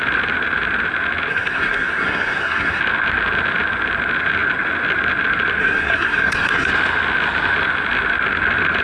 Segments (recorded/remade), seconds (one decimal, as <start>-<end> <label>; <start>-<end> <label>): 0.0-1.3 recorded; 1.3-2.8 remade; 2.8-5.6 recorded; 5.6-6.7 remade; 6.7-8.8 recorded